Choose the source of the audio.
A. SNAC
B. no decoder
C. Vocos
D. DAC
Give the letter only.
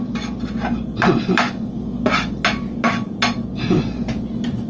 B